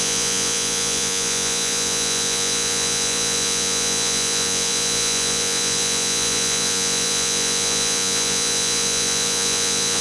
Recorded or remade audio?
remade